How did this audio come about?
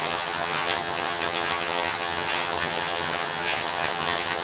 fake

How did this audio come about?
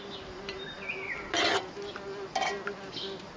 real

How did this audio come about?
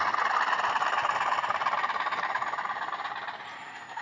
real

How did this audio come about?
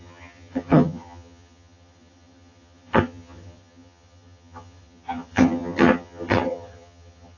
fake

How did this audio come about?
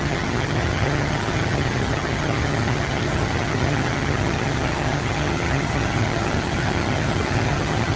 fake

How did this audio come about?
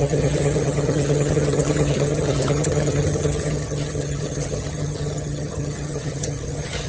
fake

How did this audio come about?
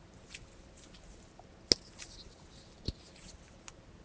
real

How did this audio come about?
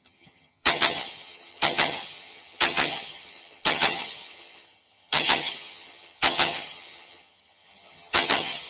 fake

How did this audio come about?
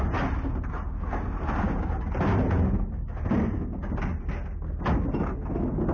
real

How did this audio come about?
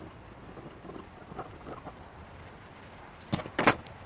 real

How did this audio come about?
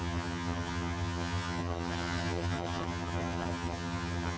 fake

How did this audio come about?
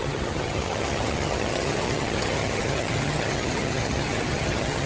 fake